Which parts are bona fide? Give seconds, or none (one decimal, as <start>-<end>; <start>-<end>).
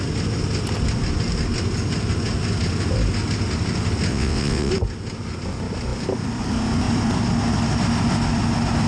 0.0-4.1; 4.7-8.9